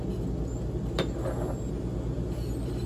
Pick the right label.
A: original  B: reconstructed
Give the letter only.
A